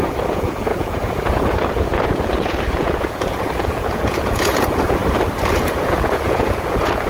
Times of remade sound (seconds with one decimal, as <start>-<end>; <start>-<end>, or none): 0.0-5.0; 5.5-7.1